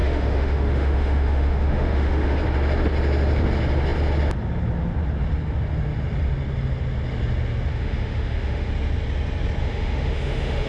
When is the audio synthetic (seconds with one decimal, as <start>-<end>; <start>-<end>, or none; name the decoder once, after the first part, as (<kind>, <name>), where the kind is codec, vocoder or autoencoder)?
0.0-2.4 (autoencoder, DAC-VAE); 7.7-8.7; 9.6-10.7